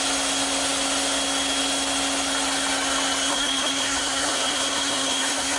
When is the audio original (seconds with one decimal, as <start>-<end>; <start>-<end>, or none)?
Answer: 0.0-3.3